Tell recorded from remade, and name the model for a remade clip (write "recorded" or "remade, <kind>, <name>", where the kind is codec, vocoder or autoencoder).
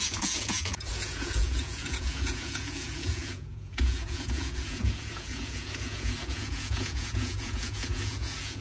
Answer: remade, vocoder, Vocos